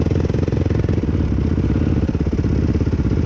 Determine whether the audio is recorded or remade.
recorded